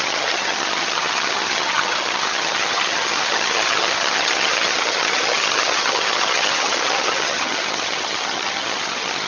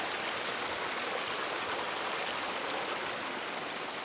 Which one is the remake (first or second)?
first